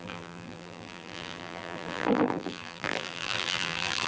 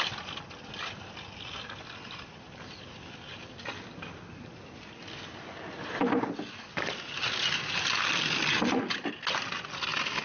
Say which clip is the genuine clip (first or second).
second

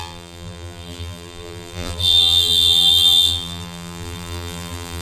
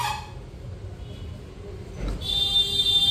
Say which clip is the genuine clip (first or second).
second